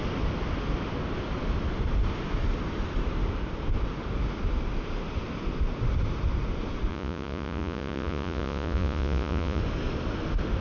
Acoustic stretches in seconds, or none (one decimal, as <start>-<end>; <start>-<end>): 0.0-6.9; 9.6-10.6